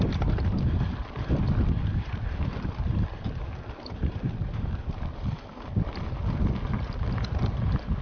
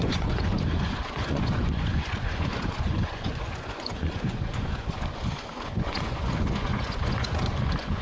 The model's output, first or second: second